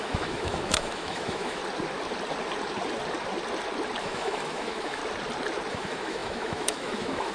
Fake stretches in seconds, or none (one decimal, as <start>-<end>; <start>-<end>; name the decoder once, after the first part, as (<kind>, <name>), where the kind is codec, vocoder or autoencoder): 0.0-1.6 (autoencoder, DAC-VAE); 4.0-5.0; 5.7-7.3